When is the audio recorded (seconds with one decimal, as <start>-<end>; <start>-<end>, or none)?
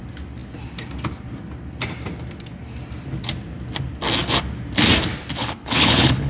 0.0-5.4